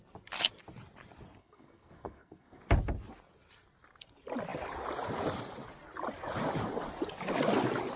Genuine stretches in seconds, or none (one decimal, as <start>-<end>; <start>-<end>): 0.0-1.4; 2.6-8.0